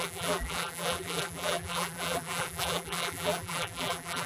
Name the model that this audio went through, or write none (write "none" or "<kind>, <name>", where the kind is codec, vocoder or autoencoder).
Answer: vocoder, BigVGAN v2